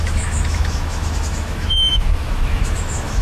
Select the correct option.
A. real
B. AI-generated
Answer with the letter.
B